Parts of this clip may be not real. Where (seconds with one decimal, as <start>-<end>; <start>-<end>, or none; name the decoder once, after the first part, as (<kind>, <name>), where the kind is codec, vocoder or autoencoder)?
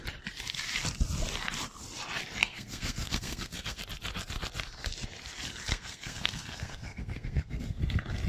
2.4-3.8 (codec, SNAC); 5.7-7.8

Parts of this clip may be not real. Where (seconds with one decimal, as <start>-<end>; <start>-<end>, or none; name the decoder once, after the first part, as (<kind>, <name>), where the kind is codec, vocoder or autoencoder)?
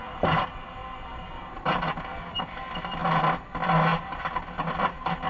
none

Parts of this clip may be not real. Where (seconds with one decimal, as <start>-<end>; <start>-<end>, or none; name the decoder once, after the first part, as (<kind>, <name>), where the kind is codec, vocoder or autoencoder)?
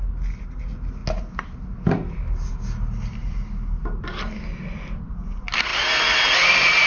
none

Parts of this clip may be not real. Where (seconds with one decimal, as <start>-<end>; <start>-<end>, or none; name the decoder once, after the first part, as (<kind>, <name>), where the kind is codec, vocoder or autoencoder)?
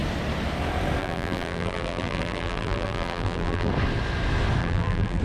1.0-3.7 (vocoder, BigVGAN v2); 4.6-5.2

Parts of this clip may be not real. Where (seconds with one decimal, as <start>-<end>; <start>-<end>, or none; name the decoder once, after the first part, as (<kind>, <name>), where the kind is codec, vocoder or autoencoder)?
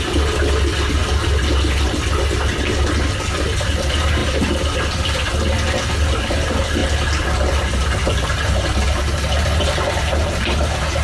none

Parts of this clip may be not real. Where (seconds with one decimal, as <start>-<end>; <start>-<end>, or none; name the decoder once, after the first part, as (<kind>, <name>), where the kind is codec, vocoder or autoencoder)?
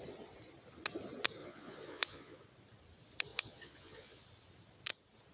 1.4-2.4 (vocoder, Vocos); 3.3-4.2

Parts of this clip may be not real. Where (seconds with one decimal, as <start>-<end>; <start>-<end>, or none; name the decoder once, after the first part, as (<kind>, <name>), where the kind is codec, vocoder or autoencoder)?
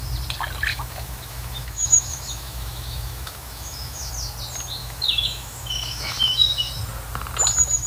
0.7-4.1 (autoencoder, DAC-VAE); 4.8-6.7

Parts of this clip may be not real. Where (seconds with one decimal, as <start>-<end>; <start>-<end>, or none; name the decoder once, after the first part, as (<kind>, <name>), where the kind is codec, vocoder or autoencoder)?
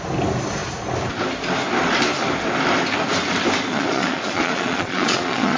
3.7-5.6 (vocoder, Vocos)